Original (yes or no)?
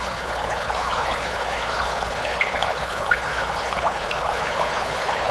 no